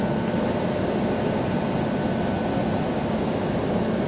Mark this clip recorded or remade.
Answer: recorded